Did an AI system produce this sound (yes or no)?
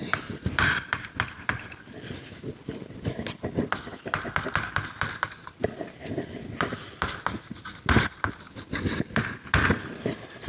no